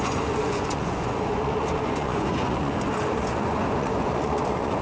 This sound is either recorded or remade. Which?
remade